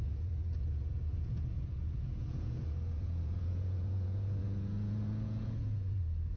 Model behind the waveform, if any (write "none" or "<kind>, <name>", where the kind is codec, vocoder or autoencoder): vocoder, Vocos